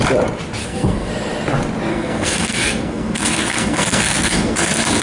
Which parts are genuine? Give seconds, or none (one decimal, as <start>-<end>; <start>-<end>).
0.0-0.6; 1.1-1.9